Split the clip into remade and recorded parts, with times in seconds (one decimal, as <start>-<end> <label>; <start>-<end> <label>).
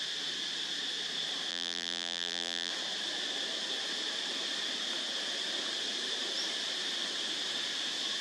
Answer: 0.0-1.5 recorded; 1.5-2.7 remade; 2.7-8.2 recorded